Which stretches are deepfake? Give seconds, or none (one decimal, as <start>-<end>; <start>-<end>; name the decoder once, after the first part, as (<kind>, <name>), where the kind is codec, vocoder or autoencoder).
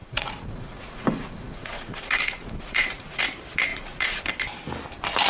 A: 0.0-3.2 (vocoder, Vocos); 3.7-4.2